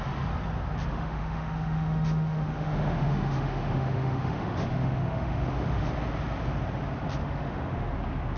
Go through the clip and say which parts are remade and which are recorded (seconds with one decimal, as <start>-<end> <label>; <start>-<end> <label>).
0.0-0.9 recorded; 0.9-5.9 remade; 5.9-7.2 recorded; 7.2-7.9 remade; 7.9-8.4 recorded